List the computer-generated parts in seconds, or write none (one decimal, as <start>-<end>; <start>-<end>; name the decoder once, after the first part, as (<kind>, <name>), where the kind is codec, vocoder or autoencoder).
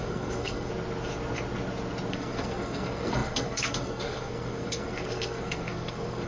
0.0-0.7 (codec, SNAC); 2.1-6.3